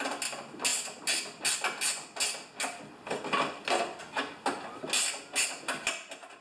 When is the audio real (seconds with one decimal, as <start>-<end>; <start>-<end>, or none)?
0.0-6.4